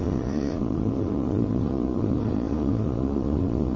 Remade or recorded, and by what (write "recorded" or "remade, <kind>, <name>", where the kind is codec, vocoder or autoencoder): remade, vocoder, Vocos